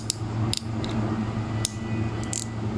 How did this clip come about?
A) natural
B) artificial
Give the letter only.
A